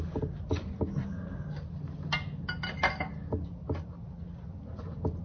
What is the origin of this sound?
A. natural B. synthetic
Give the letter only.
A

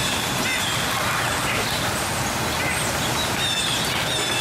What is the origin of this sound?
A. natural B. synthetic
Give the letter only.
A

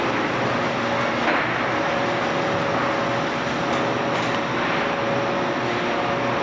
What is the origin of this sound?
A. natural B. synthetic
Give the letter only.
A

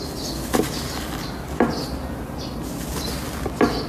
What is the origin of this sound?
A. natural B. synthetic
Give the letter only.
A